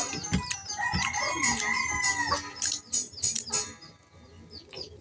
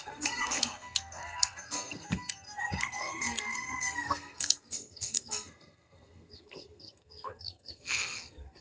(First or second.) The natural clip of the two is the first